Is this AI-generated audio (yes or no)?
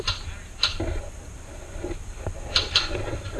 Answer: no